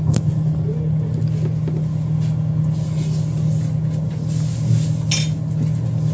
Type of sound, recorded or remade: recorded